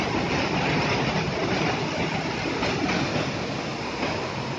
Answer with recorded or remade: recorded